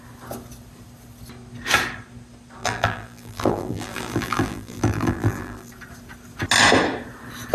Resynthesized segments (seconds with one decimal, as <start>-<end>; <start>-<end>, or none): 2.6-5.7